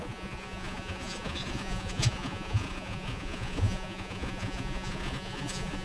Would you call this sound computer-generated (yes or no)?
yes